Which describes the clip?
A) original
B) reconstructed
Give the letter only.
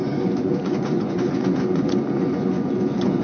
B